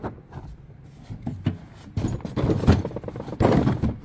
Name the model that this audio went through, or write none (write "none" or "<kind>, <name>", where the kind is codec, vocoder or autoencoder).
none